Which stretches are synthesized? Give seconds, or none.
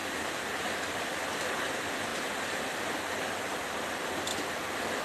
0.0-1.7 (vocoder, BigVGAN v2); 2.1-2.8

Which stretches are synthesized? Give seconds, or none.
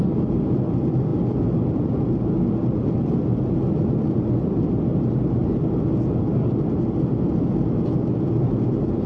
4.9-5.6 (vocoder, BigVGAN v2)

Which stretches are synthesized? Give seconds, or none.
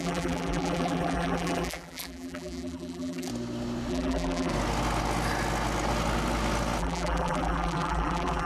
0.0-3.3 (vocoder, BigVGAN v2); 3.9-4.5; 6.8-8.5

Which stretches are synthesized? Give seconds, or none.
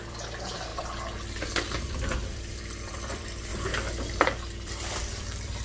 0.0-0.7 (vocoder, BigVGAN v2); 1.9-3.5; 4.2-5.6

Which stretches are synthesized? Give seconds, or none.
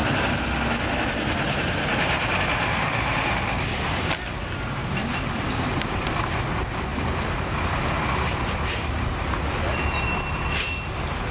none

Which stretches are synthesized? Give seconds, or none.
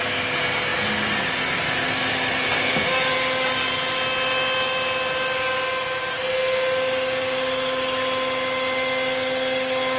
none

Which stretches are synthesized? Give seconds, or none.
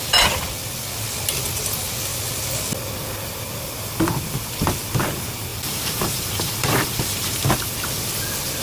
5.5-7.5 (vocoder, BigVGAN v2)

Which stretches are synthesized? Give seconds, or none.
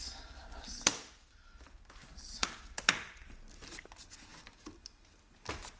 none